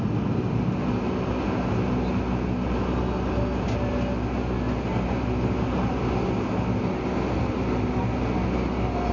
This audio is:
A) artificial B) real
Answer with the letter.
B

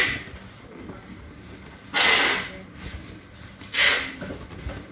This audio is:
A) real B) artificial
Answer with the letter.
A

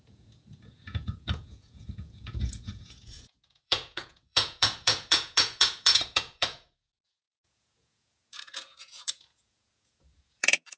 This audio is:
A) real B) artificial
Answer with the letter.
B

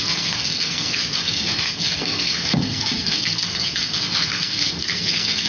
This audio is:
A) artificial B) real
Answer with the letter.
A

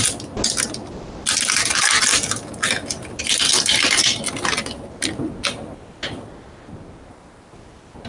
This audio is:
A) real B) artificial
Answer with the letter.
A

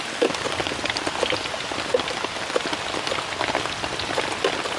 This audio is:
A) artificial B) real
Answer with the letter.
B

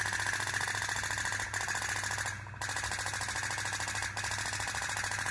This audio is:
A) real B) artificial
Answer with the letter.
A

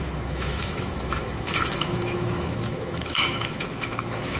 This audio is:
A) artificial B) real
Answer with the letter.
A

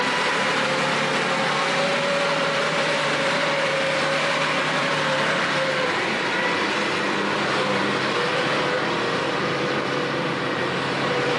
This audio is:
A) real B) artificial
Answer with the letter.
B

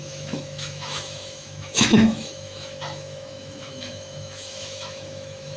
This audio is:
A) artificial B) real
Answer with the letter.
A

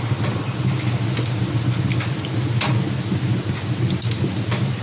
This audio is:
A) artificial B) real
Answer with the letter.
B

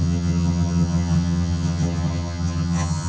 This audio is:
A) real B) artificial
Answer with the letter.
B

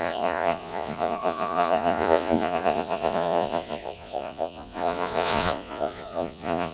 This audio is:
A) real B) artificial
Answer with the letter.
B